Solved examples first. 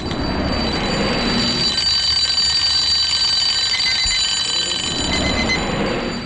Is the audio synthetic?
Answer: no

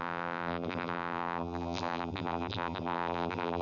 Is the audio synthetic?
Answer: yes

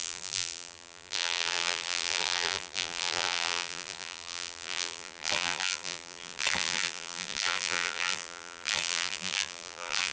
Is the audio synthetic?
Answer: yes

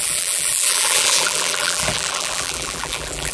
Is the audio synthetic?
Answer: yes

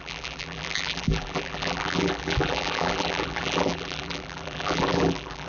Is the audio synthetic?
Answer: yes